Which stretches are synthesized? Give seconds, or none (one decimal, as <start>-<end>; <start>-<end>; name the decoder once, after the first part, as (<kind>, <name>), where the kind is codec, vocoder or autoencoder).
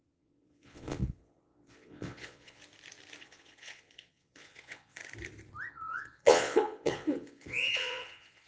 0.0-2.6 (vocoder, Vocos); 3.2-5.0; 5.7-8.5